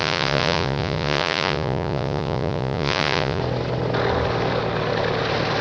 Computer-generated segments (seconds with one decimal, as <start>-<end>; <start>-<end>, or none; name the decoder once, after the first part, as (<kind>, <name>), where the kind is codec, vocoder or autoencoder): 0.0-3.4 (vocoder, Vocos)